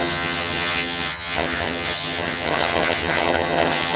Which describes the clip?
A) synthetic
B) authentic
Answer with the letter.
A